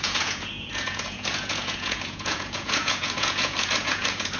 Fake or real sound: fake